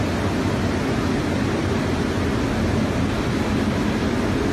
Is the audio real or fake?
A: real